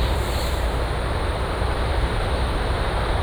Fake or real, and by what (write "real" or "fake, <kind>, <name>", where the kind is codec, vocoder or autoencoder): fake, vocoder, BigVGAN v2